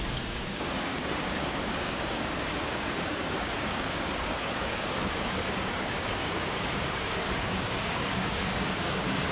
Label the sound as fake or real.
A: fake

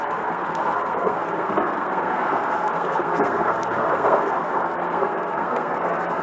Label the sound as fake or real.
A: fake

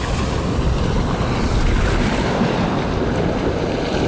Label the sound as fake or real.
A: real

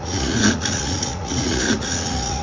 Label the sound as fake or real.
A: fake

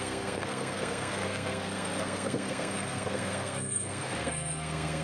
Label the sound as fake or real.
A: fake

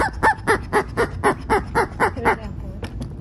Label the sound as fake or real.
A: real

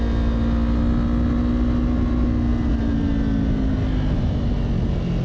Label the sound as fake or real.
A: real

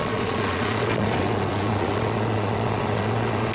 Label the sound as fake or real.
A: fake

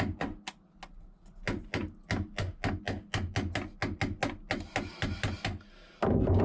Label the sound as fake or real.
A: real